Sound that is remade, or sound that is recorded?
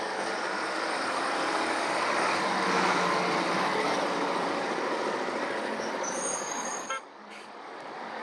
remade